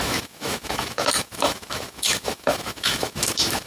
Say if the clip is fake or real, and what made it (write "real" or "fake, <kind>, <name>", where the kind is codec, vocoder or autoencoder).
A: fake, autoencoder, DAC-VAE